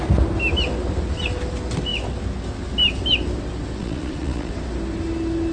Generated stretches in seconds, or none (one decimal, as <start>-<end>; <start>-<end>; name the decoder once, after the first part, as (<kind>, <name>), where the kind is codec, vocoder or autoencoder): 3.8-4.5 (vocoder, Vocos)